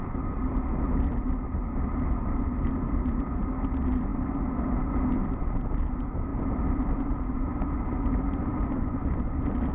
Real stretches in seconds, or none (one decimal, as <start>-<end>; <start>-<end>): 0.0-9.7